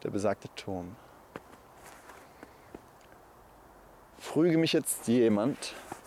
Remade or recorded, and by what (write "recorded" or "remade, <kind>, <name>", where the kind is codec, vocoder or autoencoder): recorded